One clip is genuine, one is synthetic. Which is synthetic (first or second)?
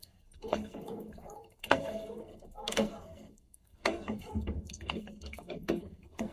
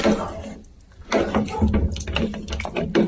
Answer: first